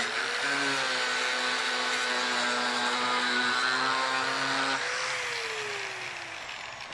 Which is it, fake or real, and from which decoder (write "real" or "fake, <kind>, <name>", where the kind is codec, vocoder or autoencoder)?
real